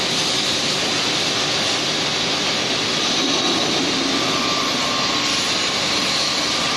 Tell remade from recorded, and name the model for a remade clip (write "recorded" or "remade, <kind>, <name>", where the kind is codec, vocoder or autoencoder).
recorded